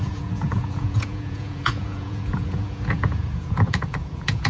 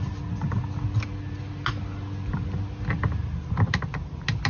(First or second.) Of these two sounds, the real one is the second